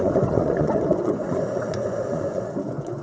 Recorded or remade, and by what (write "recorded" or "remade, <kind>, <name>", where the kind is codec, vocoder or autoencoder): remade, vocoder, Vocos